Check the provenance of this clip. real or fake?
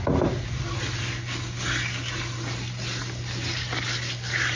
real